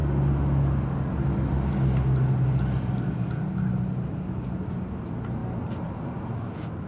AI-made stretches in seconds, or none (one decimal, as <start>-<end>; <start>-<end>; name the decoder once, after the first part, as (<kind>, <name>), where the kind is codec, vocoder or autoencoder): none